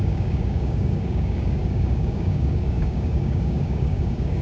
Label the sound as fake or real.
fake